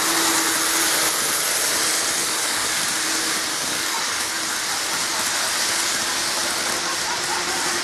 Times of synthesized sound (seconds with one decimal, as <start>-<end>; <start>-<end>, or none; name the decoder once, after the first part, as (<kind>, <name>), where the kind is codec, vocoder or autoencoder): 2.2-2.8 (codec, DAC); 3.5-4.3